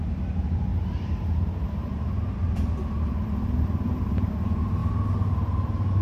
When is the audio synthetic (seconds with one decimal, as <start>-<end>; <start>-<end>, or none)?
0.7-4.3